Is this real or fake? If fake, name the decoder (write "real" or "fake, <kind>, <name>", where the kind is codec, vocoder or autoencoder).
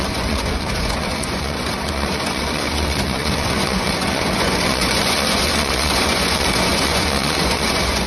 fake, vocoder, Vocos